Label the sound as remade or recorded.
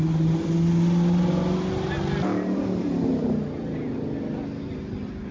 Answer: recorded